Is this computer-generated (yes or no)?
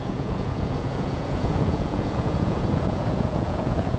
yes